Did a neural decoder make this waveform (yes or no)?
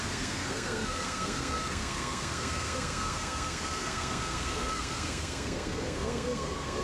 yes